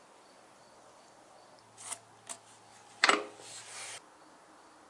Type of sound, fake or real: real